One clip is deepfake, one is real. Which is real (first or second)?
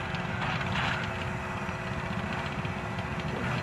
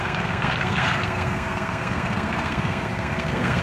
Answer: first